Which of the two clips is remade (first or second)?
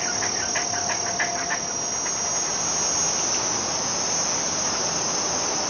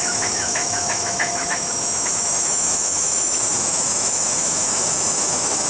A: second